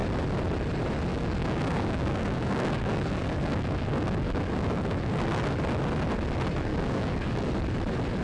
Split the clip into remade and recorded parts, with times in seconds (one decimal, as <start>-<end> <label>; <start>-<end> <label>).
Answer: 0.0-1.1 recorded; 1.1-5.2 remade; 5.2-6.7 recorded; 6.7-7.5 remade; 7.5-8.2 recorded